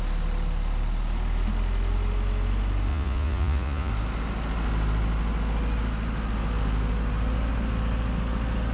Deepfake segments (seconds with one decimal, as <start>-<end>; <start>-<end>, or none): 2.9-3.9

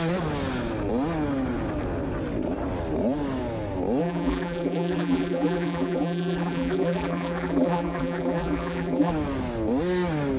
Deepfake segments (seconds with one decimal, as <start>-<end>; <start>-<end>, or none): 4.0-9.1

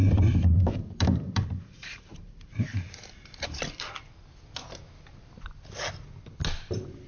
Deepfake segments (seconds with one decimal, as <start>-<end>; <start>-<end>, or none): 0.0-3.9

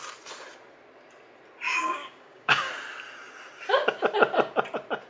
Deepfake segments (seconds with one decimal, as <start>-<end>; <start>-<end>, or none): 1.7-2.7

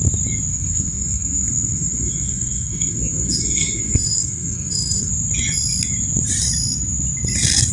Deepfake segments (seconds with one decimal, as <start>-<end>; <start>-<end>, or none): 0.5-5.1

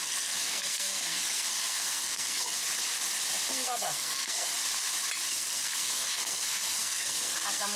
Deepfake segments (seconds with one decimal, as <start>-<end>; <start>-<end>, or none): 0.0-2.6; 3.5-4.5; 5.3-7.8